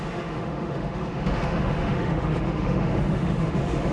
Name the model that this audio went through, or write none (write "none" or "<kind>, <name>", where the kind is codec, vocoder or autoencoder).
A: autoencoder, DAC-VAE